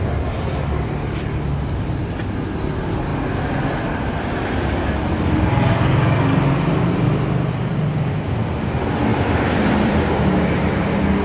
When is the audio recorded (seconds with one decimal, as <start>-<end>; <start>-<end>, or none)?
0.0-9.1; 9.9-11.2